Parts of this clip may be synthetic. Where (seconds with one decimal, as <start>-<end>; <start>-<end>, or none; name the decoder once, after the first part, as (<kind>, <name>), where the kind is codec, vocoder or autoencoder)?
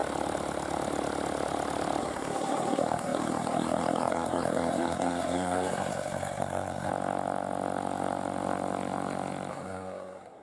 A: 2.0-6.9 (codec, SNAC); 9.5-10.4